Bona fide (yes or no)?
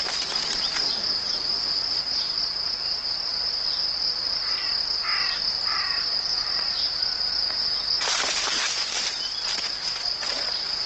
yes